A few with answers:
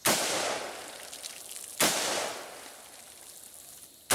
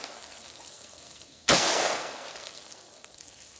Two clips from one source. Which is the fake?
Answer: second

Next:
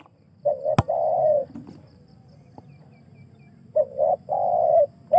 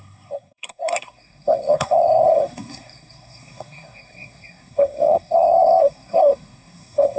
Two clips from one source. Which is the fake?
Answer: second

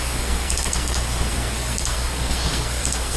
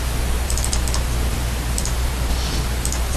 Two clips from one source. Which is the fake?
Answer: first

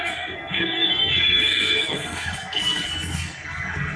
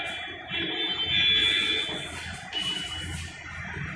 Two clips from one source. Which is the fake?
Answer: first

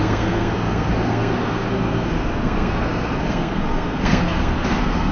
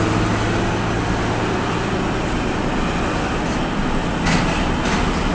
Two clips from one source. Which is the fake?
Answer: first